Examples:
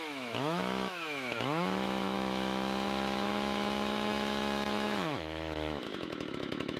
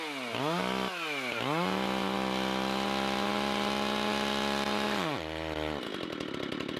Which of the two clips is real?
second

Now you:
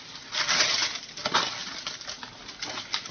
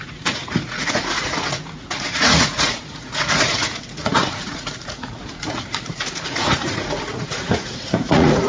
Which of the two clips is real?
first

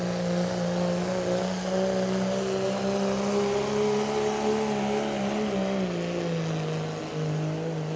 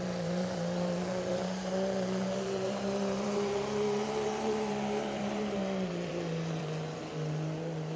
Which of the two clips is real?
first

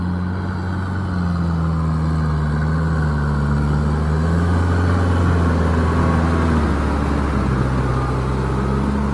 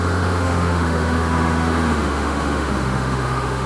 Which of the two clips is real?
first